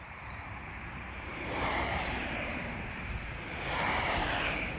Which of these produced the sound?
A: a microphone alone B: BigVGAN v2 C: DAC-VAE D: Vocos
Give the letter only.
B